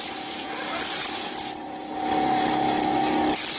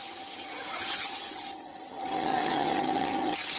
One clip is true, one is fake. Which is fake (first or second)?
second